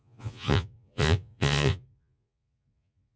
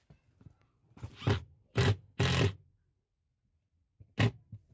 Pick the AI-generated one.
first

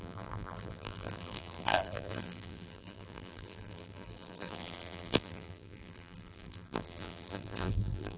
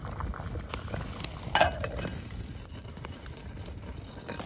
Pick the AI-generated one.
first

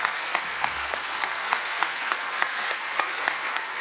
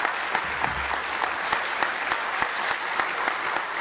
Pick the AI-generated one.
first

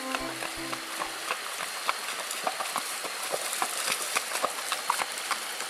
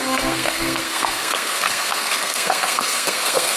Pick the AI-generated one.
second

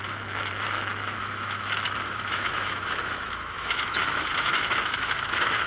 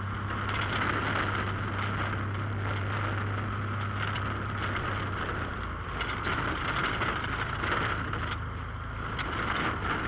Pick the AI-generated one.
first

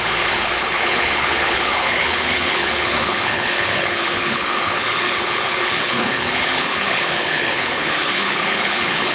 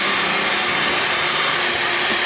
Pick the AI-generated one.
first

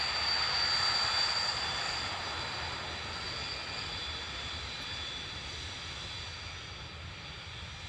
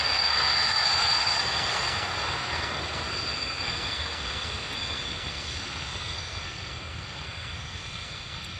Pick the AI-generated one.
second